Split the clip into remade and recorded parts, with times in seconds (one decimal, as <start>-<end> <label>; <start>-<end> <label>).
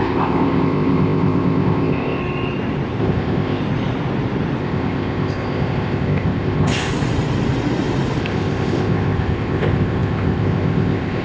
0.0-2.2 remade; 2.2-3.0 recorded; 3.0-3.6 remade; 3.6-4.6 recorded; 4.6-6.9 remade; 6.9-8.2 recorded; 8.2-11.2 remade